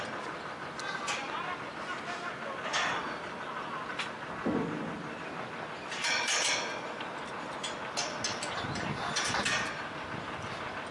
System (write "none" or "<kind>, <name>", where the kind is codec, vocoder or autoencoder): none